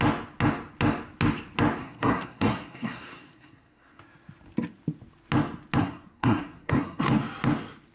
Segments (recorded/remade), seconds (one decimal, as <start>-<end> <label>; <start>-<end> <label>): 0.0-1.8 recorded; 1.8-4.0 remade; 4.0-5.8 recorded; 5.8-7.0 remade; 7.0-7.9 recorded